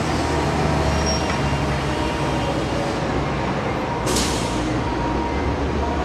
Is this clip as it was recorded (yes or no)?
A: yes